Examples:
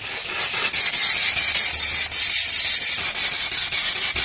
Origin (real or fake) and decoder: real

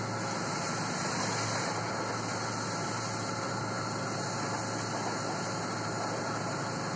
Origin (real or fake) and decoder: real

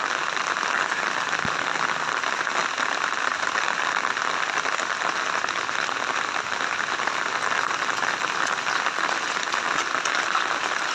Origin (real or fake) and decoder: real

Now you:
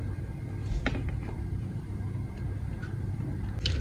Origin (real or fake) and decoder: fake, vocoder, BigVGAN v2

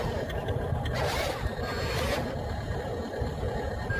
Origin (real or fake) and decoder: real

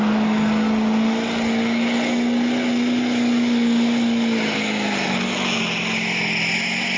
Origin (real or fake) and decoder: real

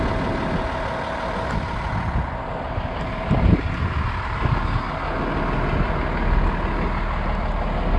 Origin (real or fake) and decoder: real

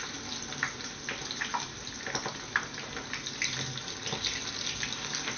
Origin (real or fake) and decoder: real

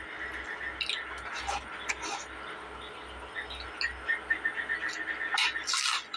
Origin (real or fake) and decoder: real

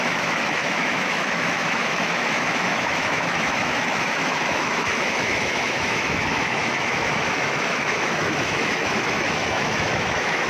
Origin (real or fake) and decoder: fake, autoencoder, DAC-VAE